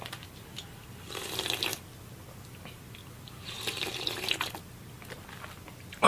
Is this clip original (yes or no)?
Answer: yes